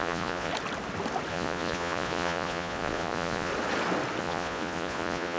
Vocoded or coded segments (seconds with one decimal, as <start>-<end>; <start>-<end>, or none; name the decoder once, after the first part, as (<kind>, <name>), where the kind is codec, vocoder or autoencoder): 0.0-0.5 (vocoder, Vocos); 1.3-3.5; 4.2-5.4